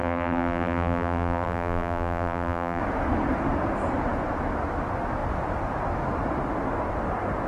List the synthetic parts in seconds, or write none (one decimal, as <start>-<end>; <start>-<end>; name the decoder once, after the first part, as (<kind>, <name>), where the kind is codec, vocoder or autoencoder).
0.0-2.8 (vocoder, BigVGAN v2)